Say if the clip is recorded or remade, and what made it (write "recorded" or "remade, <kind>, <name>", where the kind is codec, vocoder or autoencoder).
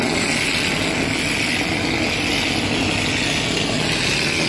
recorded